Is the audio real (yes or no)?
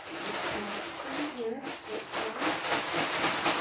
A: no